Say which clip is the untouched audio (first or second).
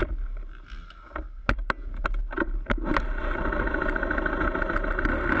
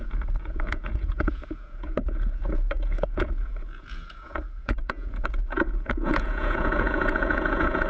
first